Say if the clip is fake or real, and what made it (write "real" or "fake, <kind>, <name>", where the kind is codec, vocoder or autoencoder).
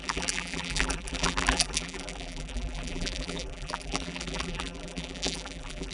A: fake, vocoder, BigVGAN v2